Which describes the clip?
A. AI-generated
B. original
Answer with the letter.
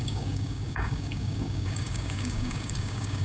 A